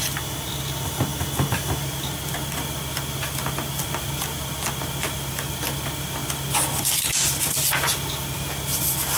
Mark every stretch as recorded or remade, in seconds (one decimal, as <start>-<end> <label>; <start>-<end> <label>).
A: 0.0-9.2 recorded